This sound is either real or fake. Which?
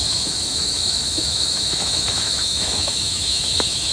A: fake